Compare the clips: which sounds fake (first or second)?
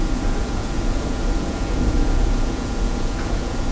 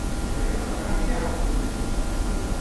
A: first